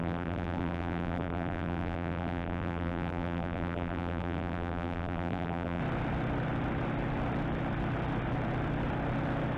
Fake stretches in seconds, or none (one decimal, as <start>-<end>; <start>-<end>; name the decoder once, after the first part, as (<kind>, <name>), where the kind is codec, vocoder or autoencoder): 0.0-5.8 (vocoder, BigVGAN v2)